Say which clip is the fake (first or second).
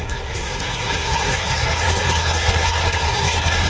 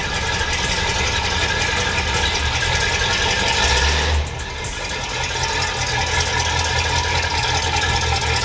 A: first